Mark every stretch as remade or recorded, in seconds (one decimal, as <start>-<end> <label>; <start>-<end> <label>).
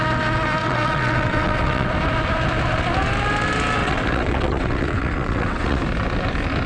0.0-0.6 recorded; 0.6-1.9 remade; 1.9-3.8 recorded; 3.8-5.8 remade; 5.8-6.7 recorded